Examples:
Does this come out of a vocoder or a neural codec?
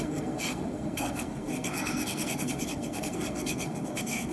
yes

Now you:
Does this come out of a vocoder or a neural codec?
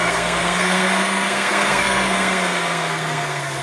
yes